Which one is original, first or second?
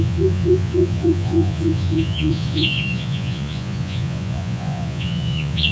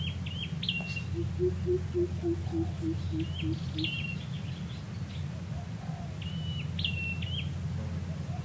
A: second